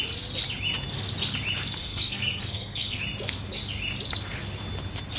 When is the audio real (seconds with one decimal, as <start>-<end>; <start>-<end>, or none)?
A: 0.0-1.8; 3.0-5.2